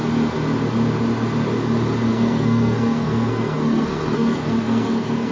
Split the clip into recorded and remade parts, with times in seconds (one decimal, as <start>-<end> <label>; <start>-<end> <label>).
0.0-2.1 recorded; 2.1-5.3 remade